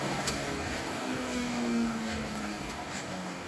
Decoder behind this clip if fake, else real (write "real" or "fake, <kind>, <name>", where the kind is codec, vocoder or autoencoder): fake, codec, DAC